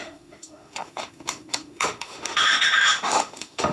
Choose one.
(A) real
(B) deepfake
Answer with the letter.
B